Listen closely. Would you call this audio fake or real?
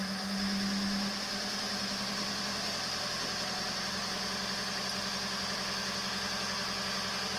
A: real